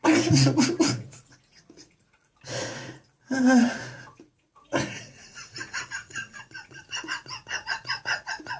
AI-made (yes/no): yes